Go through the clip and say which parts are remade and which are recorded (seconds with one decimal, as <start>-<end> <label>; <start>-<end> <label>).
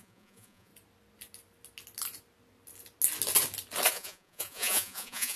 0.0-0.7 remade; 0.7-3.9 recorded; 3.9-5.4 remade